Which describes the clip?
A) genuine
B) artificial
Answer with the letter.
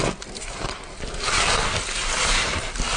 A